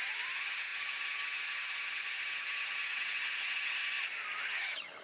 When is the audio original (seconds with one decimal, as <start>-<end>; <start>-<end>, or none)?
3.8-4.4